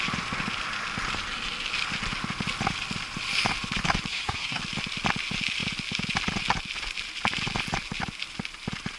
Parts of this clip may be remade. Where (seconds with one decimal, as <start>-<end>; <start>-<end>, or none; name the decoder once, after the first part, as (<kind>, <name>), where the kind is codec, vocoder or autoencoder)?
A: 4.1-4.6 (codec, SNAC)